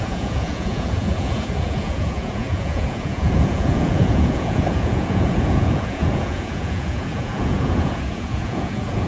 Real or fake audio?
fake